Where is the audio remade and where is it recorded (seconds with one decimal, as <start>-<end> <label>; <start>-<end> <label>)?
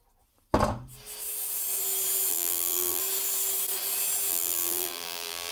0.0-2.3 recorded; 2.3-3.0 remade; 3.0-4.3 recorded; 4.3-5.5 remade